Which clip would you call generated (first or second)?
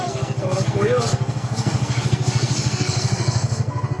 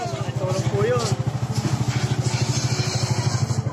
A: first